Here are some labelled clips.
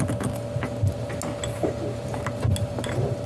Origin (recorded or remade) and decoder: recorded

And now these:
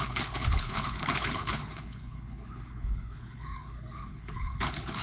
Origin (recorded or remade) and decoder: remade, codec, HILCodec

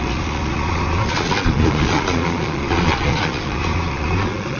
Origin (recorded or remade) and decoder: remade, vocoder, Vocos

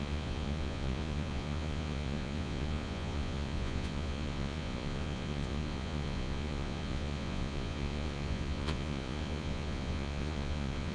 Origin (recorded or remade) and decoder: remade, vocoder, Vocos